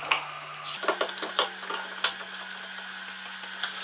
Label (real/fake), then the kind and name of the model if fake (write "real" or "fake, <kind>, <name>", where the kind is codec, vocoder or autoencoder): real